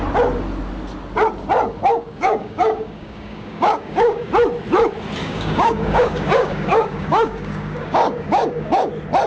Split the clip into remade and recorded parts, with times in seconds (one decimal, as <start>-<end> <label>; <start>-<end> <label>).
0.0-1.9 recorded; 1.9-4.3 remade; 4.3-5.2 recorded; 5.2-8.9 remade; 8.9-9.3 recorded